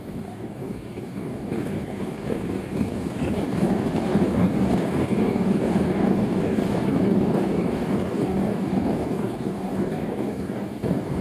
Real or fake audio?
fake